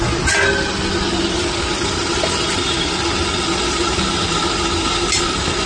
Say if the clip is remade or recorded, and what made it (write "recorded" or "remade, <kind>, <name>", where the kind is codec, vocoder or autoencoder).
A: recorded